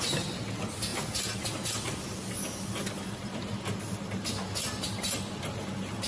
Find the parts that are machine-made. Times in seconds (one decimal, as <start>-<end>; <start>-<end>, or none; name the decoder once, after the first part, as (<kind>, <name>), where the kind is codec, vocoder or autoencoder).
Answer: none